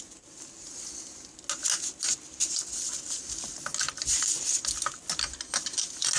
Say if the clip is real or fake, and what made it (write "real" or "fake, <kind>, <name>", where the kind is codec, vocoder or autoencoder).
real